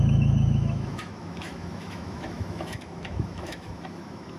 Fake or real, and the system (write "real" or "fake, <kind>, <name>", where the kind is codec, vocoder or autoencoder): fake, autoencoder, DAC-VAE